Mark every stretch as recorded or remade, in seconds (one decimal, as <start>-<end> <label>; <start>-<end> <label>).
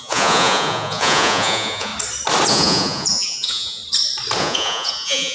0.0-1.9 remade; 1.9-2.5 recorded; 2.5-3.8 remade; 3.8-4.4 recorded; 4.4-5.3 remade